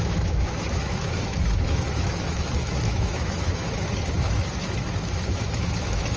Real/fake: fake